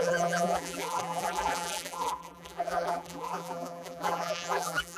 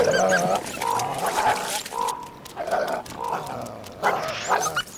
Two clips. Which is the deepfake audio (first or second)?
first